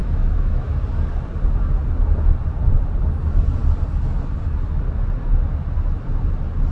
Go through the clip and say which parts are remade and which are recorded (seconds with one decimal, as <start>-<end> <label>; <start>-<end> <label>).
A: 0.0-0.7 remade; 0.7-6.7 recorded